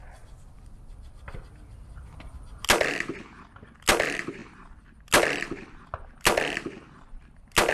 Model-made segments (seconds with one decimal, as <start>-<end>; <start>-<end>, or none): none